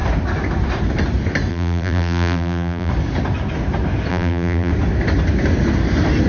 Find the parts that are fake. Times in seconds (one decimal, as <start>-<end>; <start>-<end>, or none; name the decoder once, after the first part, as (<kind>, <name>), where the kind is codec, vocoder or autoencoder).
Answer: 1.5-2.9 (vocoder, BigVGAN v2); 4.1-4.7